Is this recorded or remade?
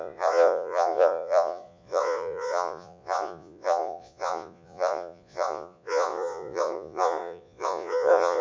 remade